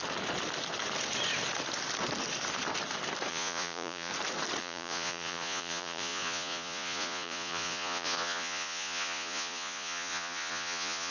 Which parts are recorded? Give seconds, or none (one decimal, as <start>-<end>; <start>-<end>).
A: 0.0-3.3; 4.1-4.6